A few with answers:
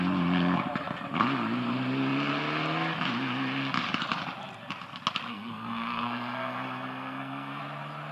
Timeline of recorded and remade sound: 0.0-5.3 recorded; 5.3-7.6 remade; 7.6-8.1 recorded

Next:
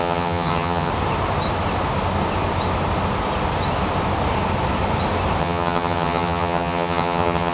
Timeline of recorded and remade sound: 0.0-0.9 remade; 0.9-5.4 recorded; 5.4-7.5 remade

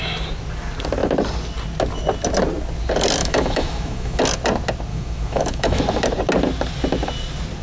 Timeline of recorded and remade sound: 0.0-3.2 recorded; 3.2-4.2 remade; 4.2-4.9 recorded; 4.9-5.8 remade; 5.8-7.6 recorded

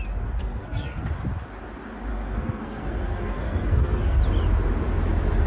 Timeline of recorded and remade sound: 0.0-0.4 recorded; 0.4-1.1 remade; 1.1-2.1 recorded; 2.1-4.2 remade; 4.2-5.5 recorded